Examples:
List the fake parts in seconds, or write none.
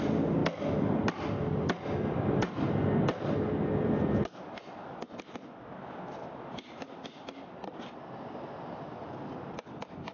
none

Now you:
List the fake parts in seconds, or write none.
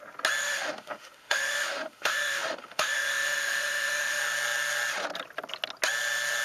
0.4-4.2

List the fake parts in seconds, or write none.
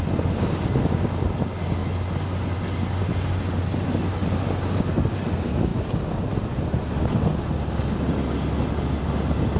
none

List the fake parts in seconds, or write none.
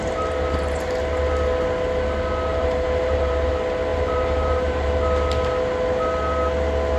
2.5-3.5; 3.9-4.9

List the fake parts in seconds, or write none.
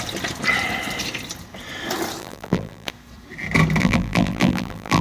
2.2-2.9; 3.8-5.0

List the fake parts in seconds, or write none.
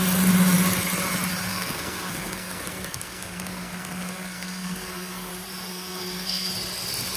1.5-5.3; 5.7-6.5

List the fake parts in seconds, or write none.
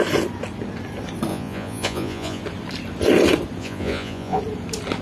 1.3-2.4; 3.6-4.4